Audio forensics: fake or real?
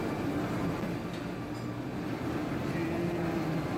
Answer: real